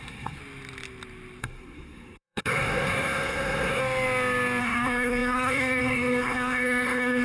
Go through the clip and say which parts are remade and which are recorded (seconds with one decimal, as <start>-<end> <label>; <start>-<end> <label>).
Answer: 0.0-0.4 remade; 0.4-1.4 recorded; 1.4-3.8 remade; 3.8-4.6 recorded; 4.6-7.2 remade